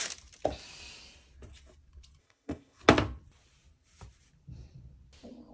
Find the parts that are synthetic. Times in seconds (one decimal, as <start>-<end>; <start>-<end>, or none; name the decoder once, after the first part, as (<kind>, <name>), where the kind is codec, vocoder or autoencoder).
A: 2.2-2.8 (codec, ZipCodec)